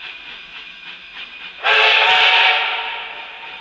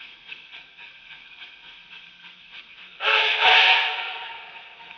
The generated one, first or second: second